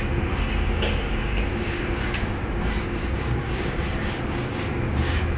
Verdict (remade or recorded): remade